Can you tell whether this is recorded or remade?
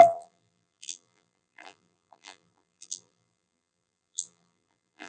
remade